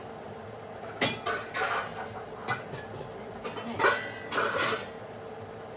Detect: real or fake real